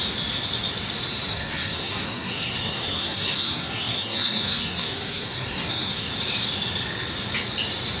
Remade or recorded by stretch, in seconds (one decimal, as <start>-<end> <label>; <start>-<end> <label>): 0.0-1.3 recorded; 1.3-6.1 remade; 6.1-8.0 recorded